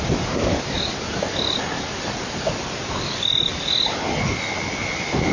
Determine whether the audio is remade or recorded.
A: recorded